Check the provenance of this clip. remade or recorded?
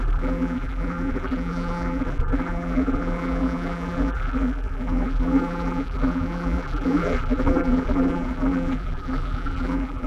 remade